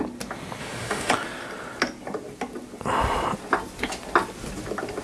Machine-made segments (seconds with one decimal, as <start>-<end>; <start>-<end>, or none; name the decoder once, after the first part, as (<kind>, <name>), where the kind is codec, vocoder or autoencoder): 0.6-1.1 (autoencoder, DAC-VAE)